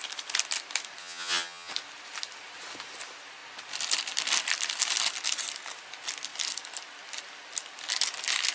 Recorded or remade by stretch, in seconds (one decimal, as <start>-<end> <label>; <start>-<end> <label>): 0.0-1.0 recorded; 1.0-1.7 remade; 1.7-8.5 recorded

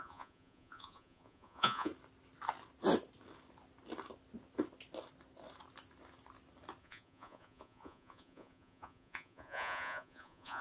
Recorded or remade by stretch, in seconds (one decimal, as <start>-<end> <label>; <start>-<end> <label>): 0.0-1.9 remade; 1.9-6.8 recorded; 6.8-10.6 remade

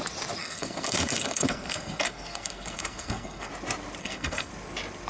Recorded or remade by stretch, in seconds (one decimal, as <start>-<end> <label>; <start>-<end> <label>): 0.0-0.4 recorded; 0.4-3.5 remade; 3.5-4.0 recorded; 4.0-4.5 remade; 4.5-5.1 recorded

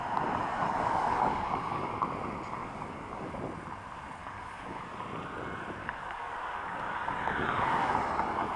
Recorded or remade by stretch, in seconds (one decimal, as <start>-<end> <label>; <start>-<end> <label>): 0.0-0.5 recorded; 0.5-2.0 remade; 2.0-2.6 recorded; 2.6-3.3 remade; 3.3-4.2 recorded; 4.2-5.0 remade; 5.0-5.8 recorded; 5.8-8.0 remade; 8.0-8.6 recorded

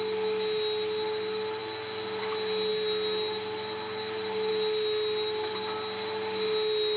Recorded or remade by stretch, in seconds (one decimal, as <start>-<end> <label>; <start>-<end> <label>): 0.0-7.0 recorded

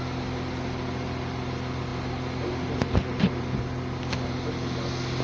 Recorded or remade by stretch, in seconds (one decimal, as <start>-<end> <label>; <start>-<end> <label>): 0.0-5.2 recorded

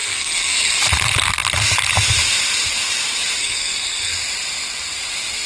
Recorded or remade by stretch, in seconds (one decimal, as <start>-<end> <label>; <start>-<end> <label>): 0.0-0.8 remade; 0.8-3.4 recorded; 3.4-4.1 remade; 4.1-5.5 recorded